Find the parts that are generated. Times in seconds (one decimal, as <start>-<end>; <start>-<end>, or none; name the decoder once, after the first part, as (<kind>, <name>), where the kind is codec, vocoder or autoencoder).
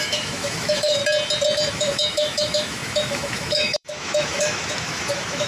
0.0-1.0 (autoencoder, DAC-VAE); 1.7-5.5